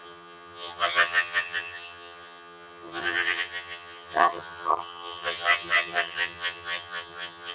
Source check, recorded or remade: remade